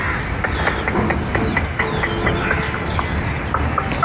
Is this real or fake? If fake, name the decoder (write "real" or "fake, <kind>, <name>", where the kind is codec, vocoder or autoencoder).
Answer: real